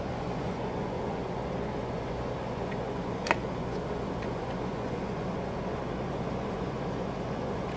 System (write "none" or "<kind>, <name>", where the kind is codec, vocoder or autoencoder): vocoder, Vocos